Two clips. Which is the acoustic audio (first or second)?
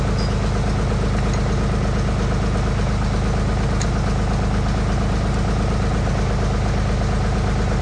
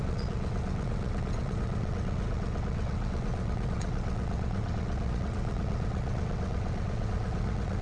first